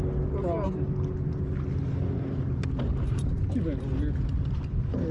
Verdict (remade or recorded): recorded